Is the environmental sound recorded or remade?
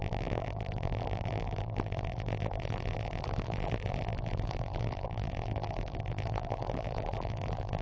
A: remade